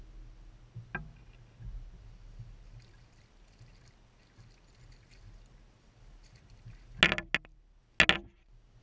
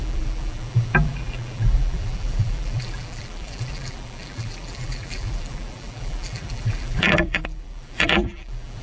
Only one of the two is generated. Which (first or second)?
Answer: second